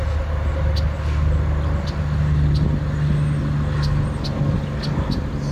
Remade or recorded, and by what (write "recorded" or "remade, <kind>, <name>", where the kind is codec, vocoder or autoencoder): recorded